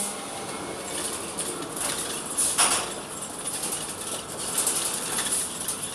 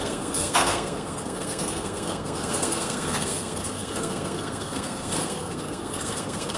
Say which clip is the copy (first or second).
second